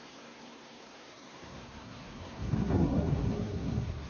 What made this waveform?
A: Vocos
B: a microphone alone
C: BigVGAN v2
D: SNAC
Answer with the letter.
D